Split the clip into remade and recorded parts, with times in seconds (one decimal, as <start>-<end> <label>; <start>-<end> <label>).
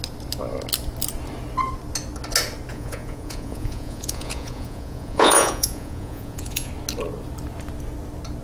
0.0-2.7 recorded; 2.7-6.7 remade; 6.7-8.4 recorded